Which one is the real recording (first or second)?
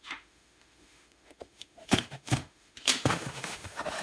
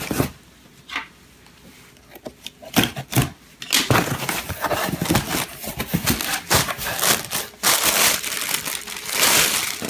second